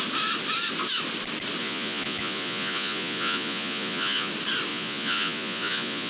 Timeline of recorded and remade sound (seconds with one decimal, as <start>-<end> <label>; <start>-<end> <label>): 0.0-1.6 recorded; 1.6-4.3 remade; 4.3-4.7 recorded; 4.7-6.1 remade